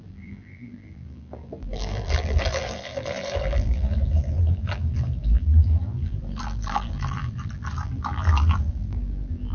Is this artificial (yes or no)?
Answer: yes